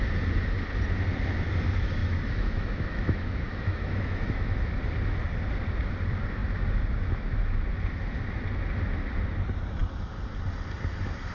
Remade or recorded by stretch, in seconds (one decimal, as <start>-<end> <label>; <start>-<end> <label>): 0.0-2.0 recorded; 2.0-4.7 remade; 4.7-11.3 recorded